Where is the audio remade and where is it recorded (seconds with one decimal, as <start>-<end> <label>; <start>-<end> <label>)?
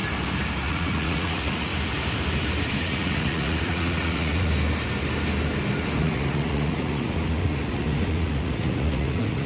0.0-0.6 recorded; 0.6-1.7 remade; 1.7-2.8 recorded; 2.8-4.5 remade; 4.5-6.0 recorded; 6.0-9.5 remade